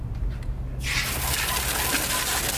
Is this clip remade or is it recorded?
recorded